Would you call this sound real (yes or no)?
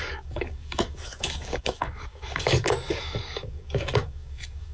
no